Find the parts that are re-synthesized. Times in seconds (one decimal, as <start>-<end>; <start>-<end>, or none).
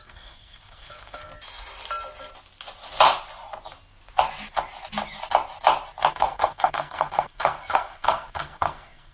0.0-1.3; 6.1-9.1